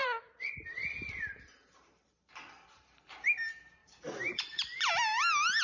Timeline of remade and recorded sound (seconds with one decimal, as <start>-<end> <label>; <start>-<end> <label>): 0.0-3.4 remade; 3.4-3.8 recorded; 3.8-4.9 remade; 4.9-5.6 recorded